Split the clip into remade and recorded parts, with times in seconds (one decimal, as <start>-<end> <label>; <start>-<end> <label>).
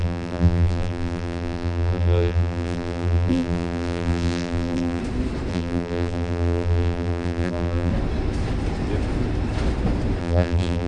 0.0-5.0 remade; 5.0-5.5 recorded; 5.5-7.9 remade; 7.9-10.2 recorded; 10.2-10.9 remade